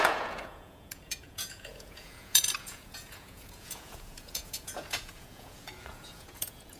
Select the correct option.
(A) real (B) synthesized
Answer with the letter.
B